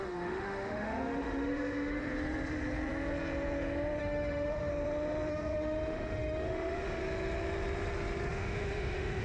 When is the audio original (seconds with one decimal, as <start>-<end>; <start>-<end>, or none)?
2.0-4.0; 4.7-5.3; 7.0-8.3